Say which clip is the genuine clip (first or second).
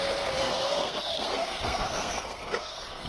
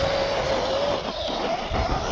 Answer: second